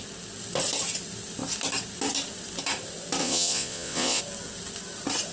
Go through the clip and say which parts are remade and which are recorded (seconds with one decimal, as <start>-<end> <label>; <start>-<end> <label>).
0.0-3.2 recorded; 3.2-4.2 remade; 4.2-5.3 recorded